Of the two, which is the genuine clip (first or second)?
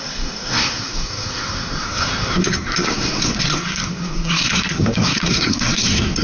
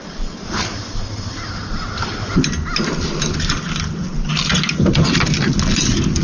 second